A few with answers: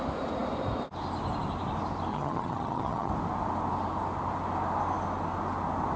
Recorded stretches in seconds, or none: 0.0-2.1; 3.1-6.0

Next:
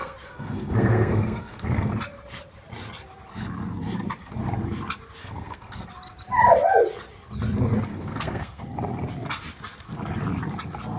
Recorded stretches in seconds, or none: 1.9-5.2; 5.9-7.9; 8.6-11.0

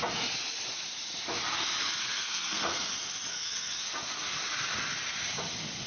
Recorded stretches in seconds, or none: 0.0-2.0; 2.9-3.3; 3.9-5.9